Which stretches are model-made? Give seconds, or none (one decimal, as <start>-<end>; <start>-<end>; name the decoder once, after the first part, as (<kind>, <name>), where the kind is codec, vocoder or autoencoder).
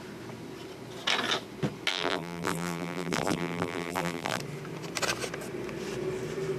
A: 1.9-4.4 (vocoder, BigVGAN v2)